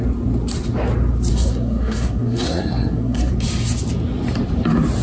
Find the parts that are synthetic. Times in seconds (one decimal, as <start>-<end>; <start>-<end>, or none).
1.3-3.3